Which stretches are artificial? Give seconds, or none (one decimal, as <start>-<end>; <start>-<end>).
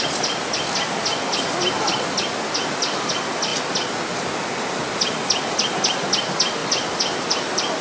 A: 6.6-7.8